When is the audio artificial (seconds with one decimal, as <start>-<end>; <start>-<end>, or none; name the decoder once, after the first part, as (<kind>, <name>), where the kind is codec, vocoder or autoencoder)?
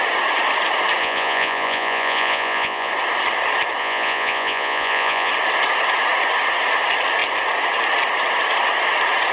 1.0-2.9 (vocoder, Vocos); 3.8-5.3